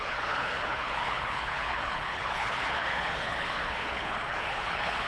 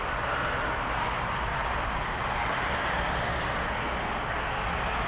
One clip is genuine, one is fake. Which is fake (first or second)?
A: first